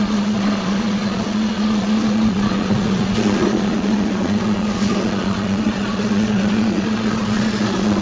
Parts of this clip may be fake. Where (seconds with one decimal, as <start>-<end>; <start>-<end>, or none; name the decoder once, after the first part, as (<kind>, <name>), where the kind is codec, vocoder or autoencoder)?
0.0-8.0 (vocoder, Vocos)